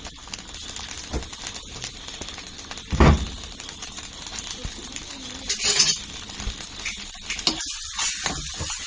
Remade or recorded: recorded